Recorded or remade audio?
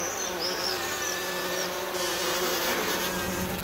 recorded